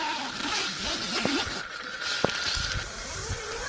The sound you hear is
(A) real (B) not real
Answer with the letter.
A